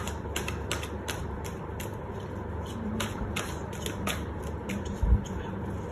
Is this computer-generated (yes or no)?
no